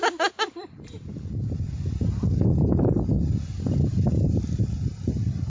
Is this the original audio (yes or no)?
yes